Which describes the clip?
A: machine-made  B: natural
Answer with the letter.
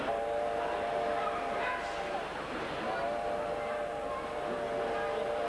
B